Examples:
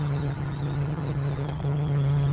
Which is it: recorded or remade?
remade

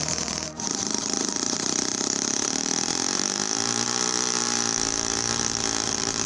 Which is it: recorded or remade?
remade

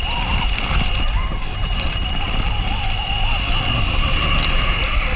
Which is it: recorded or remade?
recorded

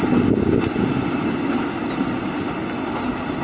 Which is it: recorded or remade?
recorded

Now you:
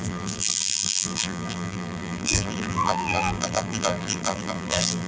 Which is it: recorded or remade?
remade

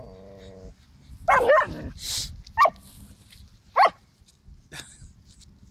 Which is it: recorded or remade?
recorded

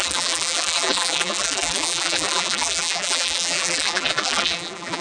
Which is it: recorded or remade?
remade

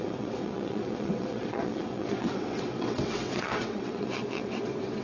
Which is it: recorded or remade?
remade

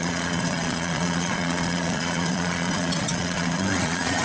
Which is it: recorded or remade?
remade